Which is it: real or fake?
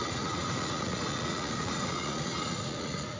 fake